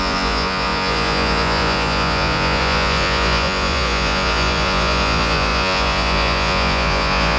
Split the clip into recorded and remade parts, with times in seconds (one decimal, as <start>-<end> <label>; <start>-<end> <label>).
0.0-7.4 remade